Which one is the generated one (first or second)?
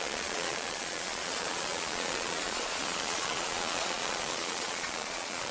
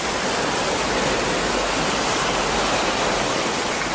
first